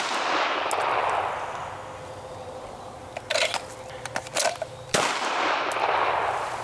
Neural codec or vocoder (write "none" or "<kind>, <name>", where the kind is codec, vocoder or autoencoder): none